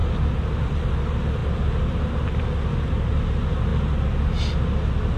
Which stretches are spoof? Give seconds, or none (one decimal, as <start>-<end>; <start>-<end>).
none